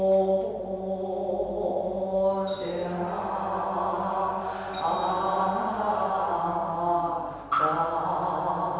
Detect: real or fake real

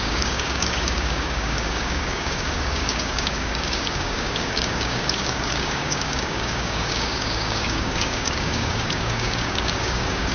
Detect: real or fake fake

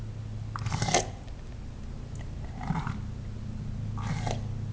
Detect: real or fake real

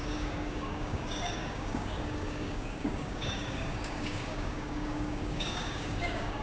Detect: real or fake fake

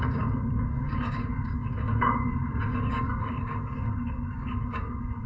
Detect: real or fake fake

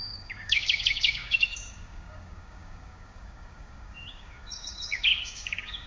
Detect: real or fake fake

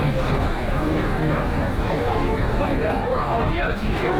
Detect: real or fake fake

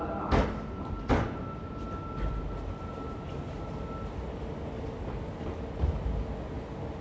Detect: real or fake real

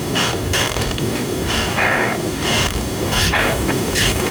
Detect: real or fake fake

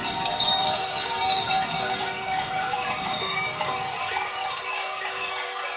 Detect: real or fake fake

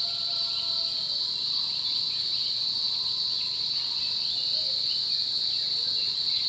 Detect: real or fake real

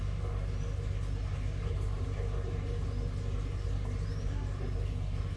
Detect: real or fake real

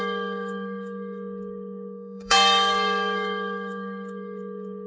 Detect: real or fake fake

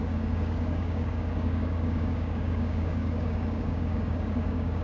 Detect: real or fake fake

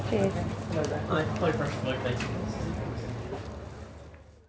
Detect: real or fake real